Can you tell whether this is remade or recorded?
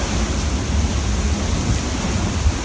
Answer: recorded